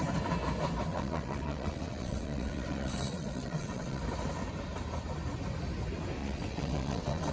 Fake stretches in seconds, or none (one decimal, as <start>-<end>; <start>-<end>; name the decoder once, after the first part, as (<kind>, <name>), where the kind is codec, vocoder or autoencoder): 0.9-4.0 (vocoder, WaveNeXt); 6.2-7.3